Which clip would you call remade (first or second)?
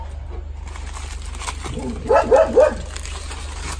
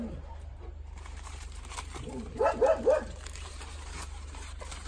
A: second